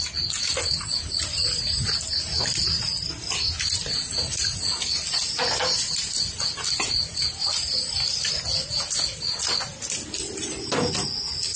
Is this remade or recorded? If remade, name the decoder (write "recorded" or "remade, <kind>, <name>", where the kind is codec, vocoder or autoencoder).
recorded